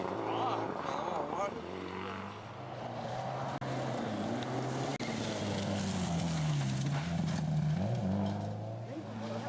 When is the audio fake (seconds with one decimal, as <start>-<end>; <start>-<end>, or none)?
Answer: none